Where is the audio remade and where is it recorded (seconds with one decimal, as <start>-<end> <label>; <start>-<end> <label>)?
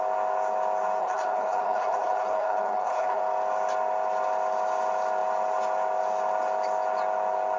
0.0-1.0 recorded; 1.0-3.2 remade; 3.2-7.6 recorded